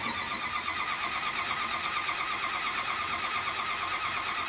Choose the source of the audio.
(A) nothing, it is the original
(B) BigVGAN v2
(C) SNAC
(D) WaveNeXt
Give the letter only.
A